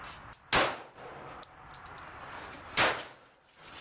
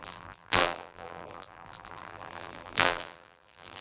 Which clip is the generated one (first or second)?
second